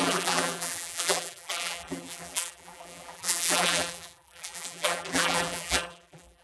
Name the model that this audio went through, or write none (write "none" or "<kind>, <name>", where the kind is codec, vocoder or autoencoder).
vocoder, BigVGAN v2